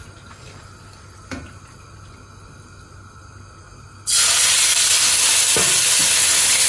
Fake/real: real